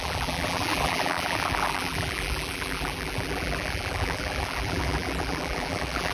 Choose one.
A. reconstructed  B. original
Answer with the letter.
A